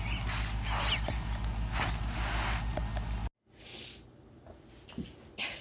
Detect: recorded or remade recorded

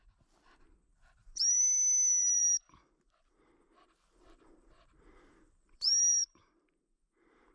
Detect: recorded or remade remade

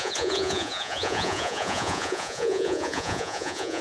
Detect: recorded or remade remade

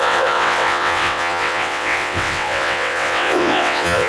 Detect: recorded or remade remade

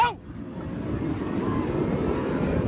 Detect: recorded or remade remade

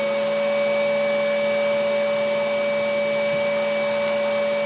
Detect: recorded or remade recorded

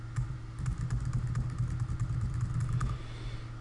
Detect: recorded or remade recorded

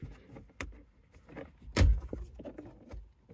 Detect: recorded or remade recorded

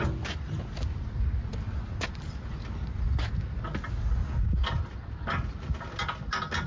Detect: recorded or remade recorded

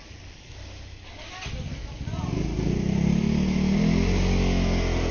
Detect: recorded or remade recorded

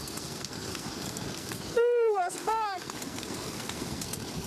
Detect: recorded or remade remade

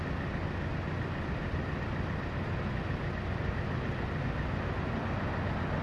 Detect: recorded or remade recorded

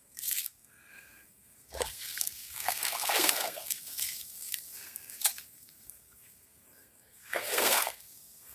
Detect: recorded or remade remade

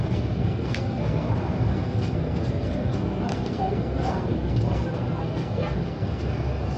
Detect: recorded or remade remade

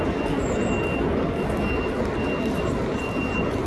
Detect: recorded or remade recorded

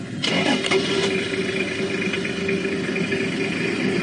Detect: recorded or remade recorded